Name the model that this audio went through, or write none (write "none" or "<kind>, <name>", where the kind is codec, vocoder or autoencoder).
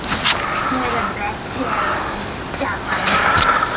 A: none